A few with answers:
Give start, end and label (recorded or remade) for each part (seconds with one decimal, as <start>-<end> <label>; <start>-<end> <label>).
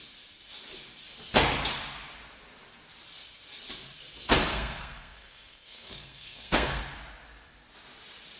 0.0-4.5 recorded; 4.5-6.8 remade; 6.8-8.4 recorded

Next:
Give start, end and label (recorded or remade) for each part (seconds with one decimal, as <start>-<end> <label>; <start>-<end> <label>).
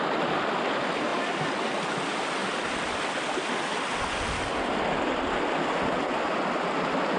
0.0-7.2 recorded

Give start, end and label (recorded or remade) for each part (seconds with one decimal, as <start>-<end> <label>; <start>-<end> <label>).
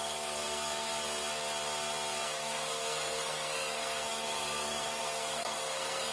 0.0-0.9 remade; 0.9-2.2 recorded; 2.2-6.1 remade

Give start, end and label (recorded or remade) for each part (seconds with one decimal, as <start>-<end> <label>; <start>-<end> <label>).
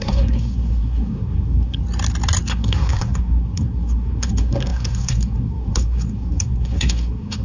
0.0-1.8 remade; 1.8-2.5 recorded; 2.5-7.4 remade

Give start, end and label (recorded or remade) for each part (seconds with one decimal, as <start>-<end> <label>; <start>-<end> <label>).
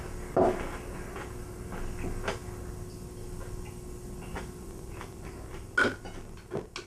0.0-6.9 recorded